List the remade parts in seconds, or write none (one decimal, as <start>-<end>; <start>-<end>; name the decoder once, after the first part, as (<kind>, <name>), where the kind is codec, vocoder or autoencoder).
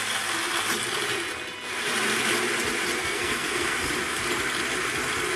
3.0-3.9 (codec, SNAC)